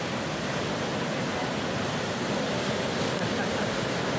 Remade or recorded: recorded